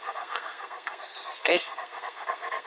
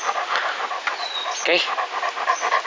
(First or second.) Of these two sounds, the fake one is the first